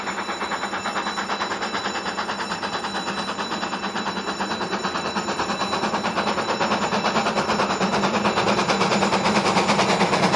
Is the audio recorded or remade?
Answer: recorded